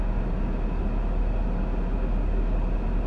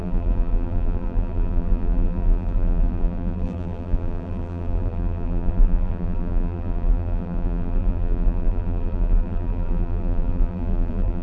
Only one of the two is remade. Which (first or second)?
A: second